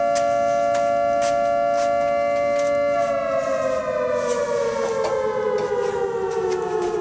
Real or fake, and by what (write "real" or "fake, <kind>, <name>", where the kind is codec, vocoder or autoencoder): real